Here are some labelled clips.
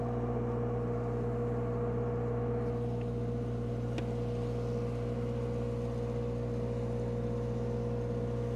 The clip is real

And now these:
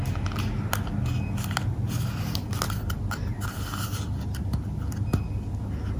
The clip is real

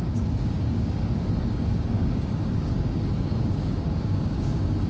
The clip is fake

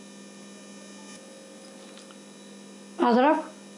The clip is real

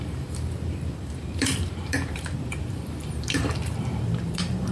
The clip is fake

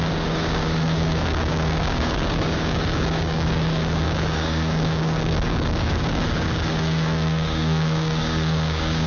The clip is fake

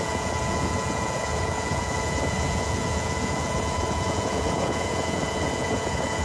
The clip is fake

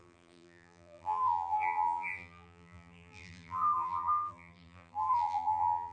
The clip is fake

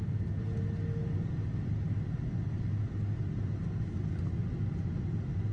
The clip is real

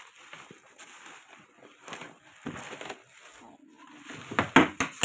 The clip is real